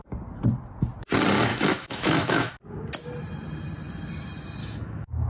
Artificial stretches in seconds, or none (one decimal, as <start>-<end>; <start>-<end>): 1.5-2.5; 4.6-5.3